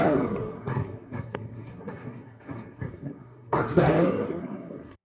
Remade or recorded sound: remade